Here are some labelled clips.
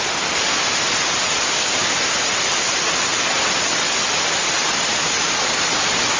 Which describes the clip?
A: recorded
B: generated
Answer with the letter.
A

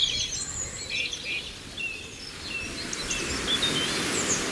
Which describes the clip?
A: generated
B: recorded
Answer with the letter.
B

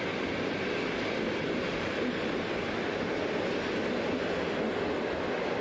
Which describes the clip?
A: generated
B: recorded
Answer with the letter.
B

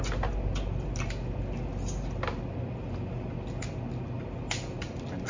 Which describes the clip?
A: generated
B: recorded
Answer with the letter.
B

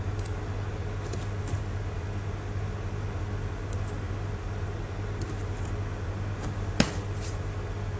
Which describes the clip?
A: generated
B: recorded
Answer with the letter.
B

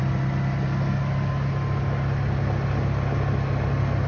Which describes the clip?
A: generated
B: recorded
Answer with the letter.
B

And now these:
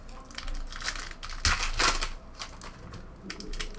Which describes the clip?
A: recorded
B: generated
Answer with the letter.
A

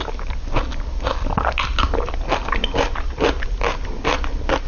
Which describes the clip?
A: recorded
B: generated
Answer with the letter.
A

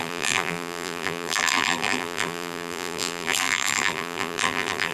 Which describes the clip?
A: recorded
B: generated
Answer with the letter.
B